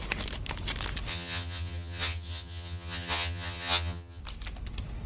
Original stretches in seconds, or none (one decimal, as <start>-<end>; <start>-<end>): 0.0-1.1; 4.2-5.1